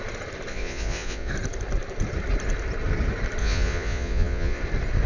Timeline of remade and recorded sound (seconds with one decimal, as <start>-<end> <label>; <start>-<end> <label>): 0.0-0.5 recorded; 0.5-1.3 remade; 1.3-3.4 recorded; 3.4-4.6 remade; 4.6-5.1 recorded